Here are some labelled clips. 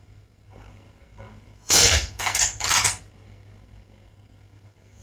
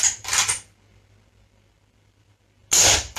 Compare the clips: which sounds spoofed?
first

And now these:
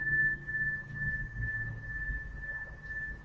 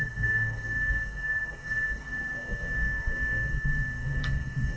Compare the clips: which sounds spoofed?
second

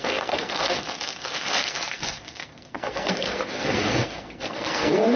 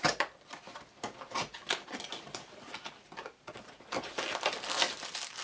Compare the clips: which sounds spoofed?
first